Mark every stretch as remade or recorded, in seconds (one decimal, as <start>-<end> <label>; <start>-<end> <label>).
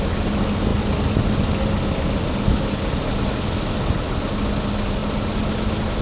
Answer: 0.0-6.0 recorded